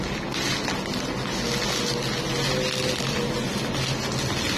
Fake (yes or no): no